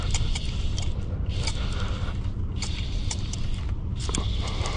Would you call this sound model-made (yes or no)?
no